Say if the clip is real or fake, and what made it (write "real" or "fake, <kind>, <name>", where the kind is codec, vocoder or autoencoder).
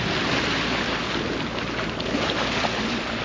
real